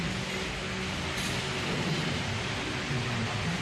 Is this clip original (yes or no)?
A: yes